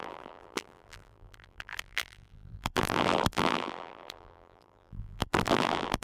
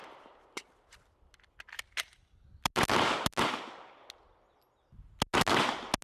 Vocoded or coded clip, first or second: first